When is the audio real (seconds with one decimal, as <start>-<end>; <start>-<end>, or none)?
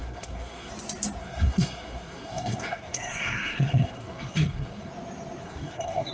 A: 0.7-1.2; 4.9-5.4